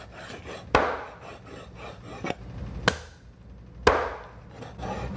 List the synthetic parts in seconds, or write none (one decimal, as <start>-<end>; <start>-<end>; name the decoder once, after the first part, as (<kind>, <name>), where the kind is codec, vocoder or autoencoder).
none